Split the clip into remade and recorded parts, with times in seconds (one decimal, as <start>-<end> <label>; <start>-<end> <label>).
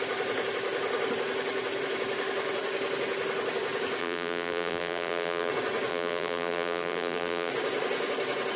0.0-4.0 recorded; 4.0-5.5 remade; 5.5-5.9 recorded; 5.9-7.5 remade; 7.5-8.6 recorded